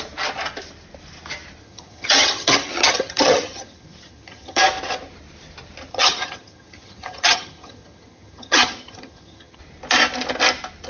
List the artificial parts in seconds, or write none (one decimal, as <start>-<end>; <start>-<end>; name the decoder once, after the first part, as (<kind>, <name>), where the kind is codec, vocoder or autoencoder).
1.6-4.6 (vocoder, HiFi-GAN); 5.9-9.6